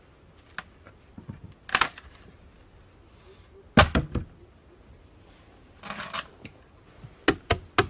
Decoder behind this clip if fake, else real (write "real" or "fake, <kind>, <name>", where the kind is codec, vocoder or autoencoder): real